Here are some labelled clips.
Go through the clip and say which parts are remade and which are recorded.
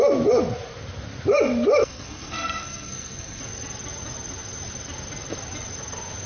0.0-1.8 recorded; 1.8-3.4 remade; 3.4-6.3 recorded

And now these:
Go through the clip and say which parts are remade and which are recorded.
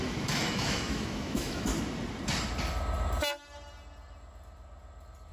0.0-1.7 remade; 1.7-5.3 recorded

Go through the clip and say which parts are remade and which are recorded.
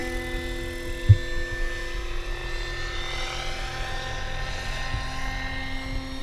0.0-6.2 recorded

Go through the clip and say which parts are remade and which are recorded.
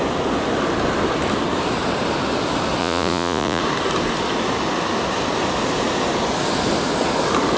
0.0-2.8 recorded; 2.8-3.6 remade; 3.6-7.6 recorded